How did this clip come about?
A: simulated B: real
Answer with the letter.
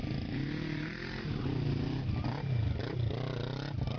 B